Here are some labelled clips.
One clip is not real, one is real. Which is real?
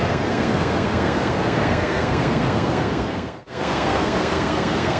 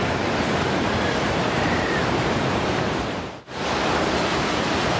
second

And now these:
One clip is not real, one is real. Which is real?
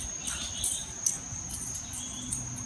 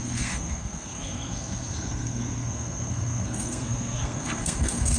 first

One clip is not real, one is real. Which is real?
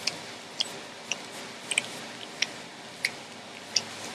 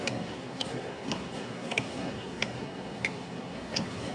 first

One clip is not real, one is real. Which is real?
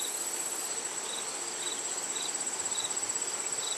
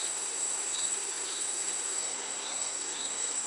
first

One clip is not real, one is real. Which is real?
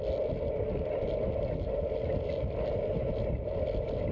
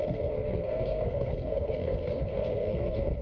first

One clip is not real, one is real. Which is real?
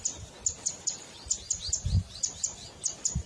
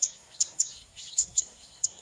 first